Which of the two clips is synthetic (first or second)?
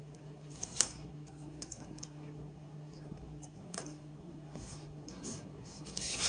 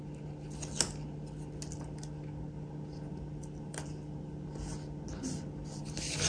first